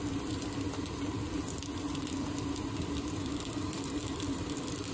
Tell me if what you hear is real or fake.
fake